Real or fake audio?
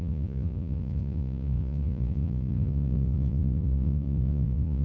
fake